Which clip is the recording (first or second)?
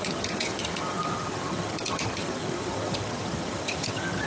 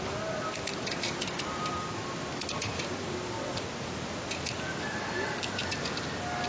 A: second